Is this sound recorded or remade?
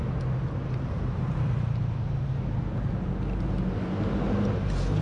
recorded